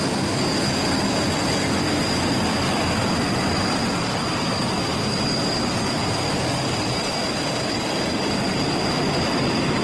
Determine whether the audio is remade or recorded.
recorded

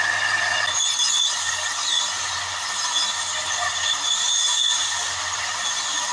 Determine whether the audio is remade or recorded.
recorded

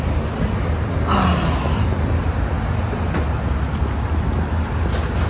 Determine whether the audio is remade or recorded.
recorded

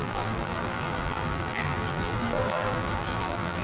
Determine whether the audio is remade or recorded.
remade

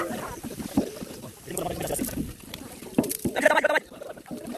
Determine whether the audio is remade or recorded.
remade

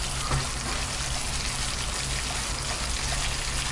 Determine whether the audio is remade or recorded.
recorded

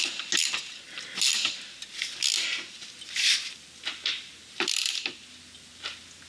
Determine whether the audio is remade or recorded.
recorded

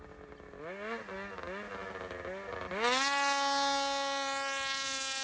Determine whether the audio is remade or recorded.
recorded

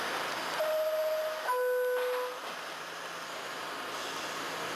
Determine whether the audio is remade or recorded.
recorded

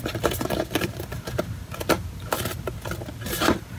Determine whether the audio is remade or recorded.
remade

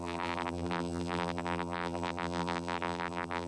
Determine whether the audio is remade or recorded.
remade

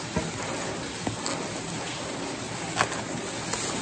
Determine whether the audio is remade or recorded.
recorded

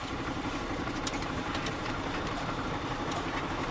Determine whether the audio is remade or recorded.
remade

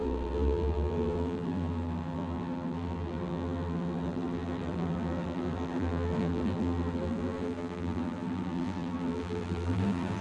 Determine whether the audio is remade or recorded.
remade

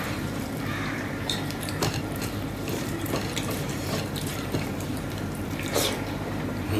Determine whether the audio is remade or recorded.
remade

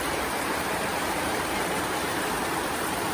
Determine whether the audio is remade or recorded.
remade